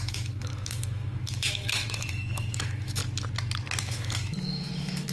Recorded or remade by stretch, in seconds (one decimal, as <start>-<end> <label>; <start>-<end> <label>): 0.0-3.0 remade; 3.0-3.8 recorded; 3.8-5.1 remade